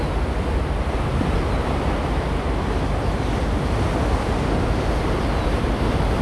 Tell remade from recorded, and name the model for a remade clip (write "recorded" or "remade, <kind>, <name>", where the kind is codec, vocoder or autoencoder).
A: recorded